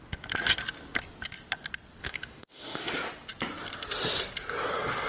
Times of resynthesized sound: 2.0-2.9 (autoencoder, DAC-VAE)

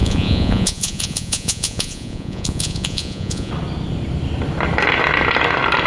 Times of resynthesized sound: 0.0-3.5 (vocoder, Vocos)

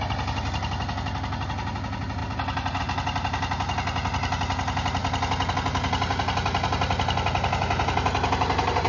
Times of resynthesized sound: none